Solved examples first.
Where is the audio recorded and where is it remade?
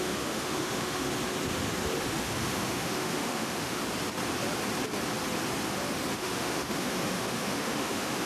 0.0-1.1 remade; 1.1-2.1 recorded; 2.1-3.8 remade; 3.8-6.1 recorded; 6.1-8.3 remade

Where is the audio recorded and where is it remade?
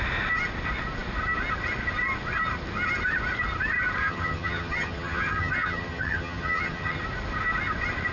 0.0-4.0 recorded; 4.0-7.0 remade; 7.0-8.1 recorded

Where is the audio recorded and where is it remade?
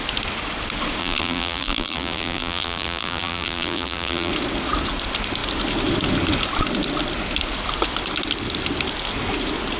0.0-1.0 recorded; 1.0-4.3 remade; 4.3-9.8 recorded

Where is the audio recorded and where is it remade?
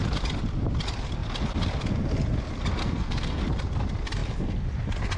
0.0-2.8 recorded; 2.8-3.4 remade; 3.4-5.2 recorded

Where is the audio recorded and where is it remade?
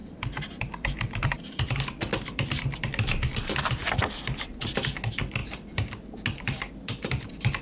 0.0-1.7 remade; 1.7-7.6 recorded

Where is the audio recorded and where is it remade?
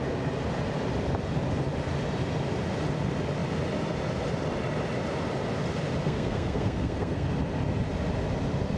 0.0-6.0 recorded; 6.0-7.3 remade; 7.3-8.8 recorded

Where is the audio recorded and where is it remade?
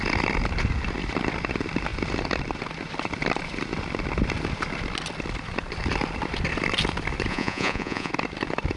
0.0-7.3 recorded; 7.3-8.1 remade; 8.1-8.8 recorded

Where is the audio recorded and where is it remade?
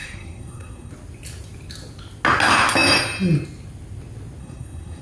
0.0-0.9 remade; 0.9-4.4 recorded; 4.4-5.0 remade